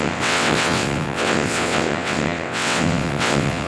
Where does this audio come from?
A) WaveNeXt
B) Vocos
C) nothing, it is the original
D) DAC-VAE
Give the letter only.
A